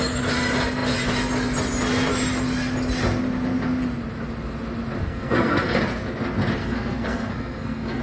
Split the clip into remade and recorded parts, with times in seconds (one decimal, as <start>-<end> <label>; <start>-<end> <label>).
0.0-5.0 recorded; 5.0-5.8 remade; 5.8-6.6 recorded; 6.6-8.0 remade